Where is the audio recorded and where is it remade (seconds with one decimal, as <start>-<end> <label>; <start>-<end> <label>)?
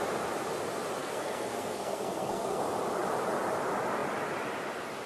0.0-1.0 recorded; 1.0-2.6 remade; 2.6-5.1 recorded